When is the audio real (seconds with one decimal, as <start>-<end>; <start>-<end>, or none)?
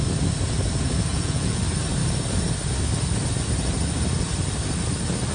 0.0-1.1; 1.6-5.3